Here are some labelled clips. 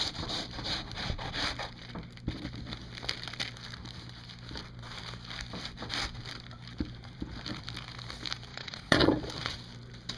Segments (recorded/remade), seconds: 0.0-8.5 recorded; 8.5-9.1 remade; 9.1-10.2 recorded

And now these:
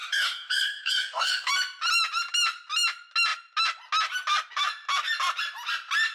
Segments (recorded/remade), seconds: 0.0-1.5 remade; 1.5-6.1 recorded

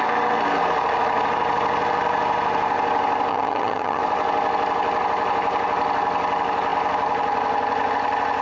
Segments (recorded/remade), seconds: 0.0-3.3 recorded; 3.3-4.0 remade; 4.0-8.4 recorded

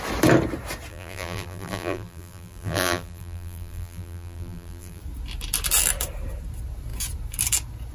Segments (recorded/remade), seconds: 0.0-0.9 recorded; 0.9-5.0 remade; 5.0-7.9 recorded